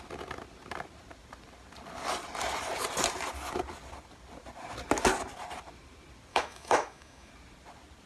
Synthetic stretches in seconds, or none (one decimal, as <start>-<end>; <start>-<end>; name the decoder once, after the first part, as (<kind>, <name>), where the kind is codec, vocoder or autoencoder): 6.3-7.3 (autoencoder, DAC-VAE)